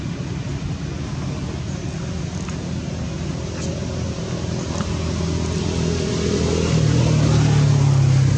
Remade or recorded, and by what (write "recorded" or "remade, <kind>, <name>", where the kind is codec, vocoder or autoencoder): recorded